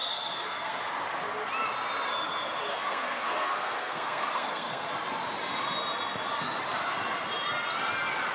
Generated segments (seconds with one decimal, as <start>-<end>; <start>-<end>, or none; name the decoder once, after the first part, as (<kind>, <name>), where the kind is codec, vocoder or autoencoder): 0.0-0.8 (codec, SNAC); 2.7-4.9